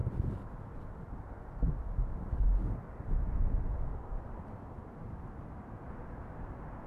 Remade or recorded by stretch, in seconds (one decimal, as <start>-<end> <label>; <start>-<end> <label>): 0.0-0.8 remade; 0.8-3.9 recorded; 3.9-5.9 remade; 5.9-6.9 recorded

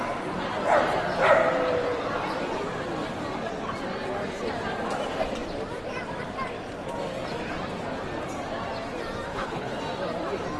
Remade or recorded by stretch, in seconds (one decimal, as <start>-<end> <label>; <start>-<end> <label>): 0.0-9.3 recorded; 9.3-9.8 remade; 9.8-10.6 recorded